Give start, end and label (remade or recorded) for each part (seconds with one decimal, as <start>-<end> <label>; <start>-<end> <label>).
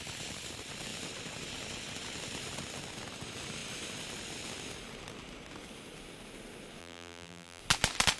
0.0-6.8 recorded; 6.8-7.6 remade; 7.6-8.2 recorded